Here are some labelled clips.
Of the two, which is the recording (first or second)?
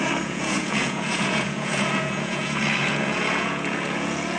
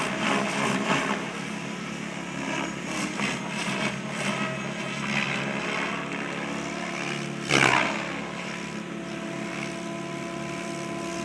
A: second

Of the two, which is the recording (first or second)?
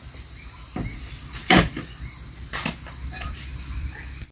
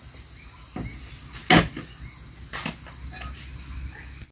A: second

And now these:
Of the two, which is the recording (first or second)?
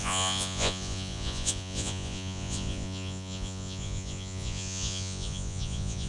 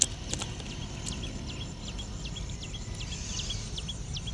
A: second